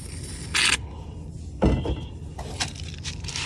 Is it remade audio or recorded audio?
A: recorded